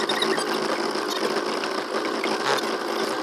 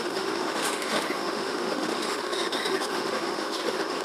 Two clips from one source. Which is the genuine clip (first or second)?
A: first